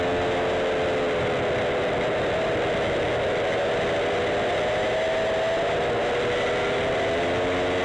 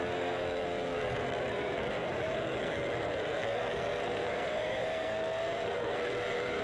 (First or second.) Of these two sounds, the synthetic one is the second